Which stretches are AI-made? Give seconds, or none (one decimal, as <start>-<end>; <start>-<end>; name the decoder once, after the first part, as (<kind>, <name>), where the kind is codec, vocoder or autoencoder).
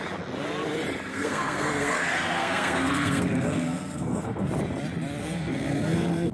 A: 1.1-4.5 (codec, SNAC); 5.2-6.3